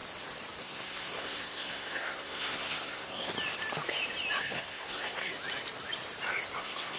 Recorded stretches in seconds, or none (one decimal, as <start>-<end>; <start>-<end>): 0.0-0.6; 3.3-4.4; 5.3-6.6